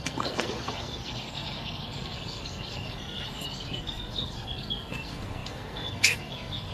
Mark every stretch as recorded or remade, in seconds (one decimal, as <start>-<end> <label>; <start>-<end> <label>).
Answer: 0.0-6.7 remade